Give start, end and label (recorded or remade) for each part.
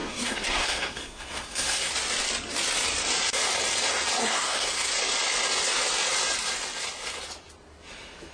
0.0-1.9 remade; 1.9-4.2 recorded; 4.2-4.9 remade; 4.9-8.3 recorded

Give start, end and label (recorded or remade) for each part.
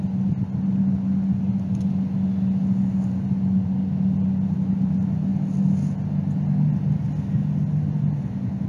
0.0-8.7 recorded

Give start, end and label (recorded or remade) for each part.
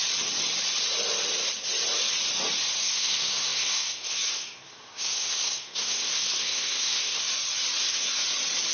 0.0-2.8 recorded; 2.8-7.3 remade; 7.3-7.8 recorded; 7.8-8.2 remade; 8.2-8.7 recorded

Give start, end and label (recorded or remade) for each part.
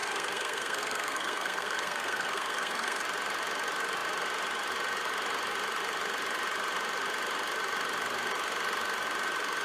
0.0-3.0 remade; 3.0-9.6 recorded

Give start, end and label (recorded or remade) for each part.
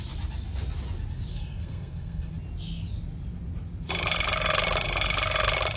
0.0-1.3 recorded; 1.3-2.3 remade; 2.3-5.8 recorded